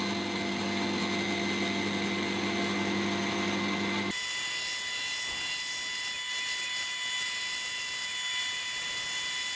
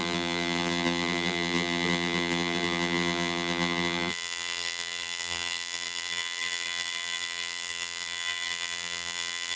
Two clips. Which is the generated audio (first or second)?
second